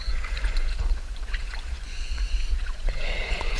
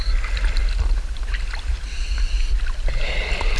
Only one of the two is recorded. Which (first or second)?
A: second